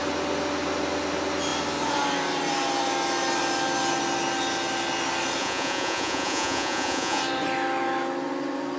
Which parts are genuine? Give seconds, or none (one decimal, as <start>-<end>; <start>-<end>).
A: 0.0-5.4; 7.2-8.8